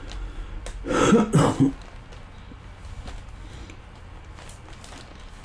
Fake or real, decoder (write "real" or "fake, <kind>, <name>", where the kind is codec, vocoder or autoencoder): real